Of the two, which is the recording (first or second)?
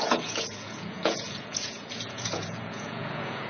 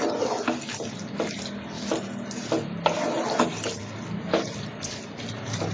second